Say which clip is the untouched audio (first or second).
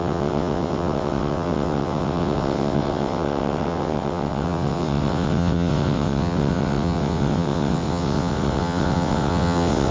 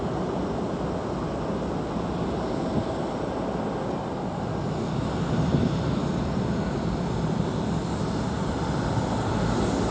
second